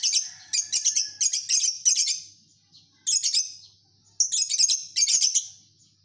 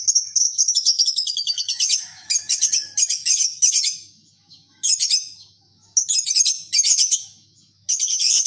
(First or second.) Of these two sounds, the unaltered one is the first